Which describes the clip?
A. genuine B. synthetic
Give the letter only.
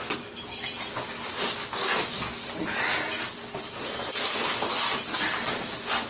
A